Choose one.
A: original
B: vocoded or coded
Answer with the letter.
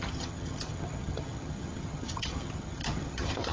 B